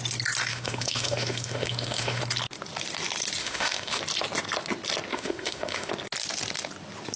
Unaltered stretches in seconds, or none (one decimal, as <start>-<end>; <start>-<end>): 0.0-0.5; 2.2-3.4; 4.0-5.1; 5.9-7.2